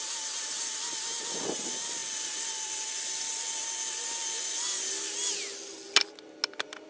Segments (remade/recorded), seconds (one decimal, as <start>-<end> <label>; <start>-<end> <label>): 0.0-6.9 recorded